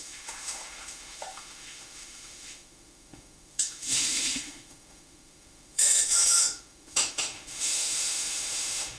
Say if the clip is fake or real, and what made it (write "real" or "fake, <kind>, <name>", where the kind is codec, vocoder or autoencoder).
fake, autoencoder, DAC-VAE